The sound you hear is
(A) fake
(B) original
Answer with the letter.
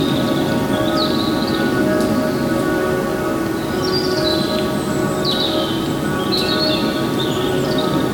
A